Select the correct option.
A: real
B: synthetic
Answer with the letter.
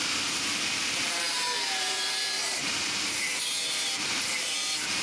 B